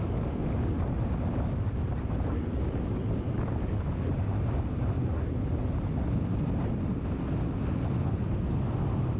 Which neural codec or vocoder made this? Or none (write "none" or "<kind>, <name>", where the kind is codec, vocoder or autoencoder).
none